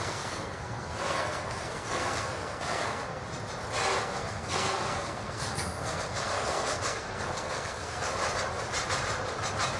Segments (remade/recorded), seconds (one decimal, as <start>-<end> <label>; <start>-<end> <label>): 0.0-3.2 remade; 3.2-4.0 recorded; 4.0-8.2 remade; 8.2-9.8 recorded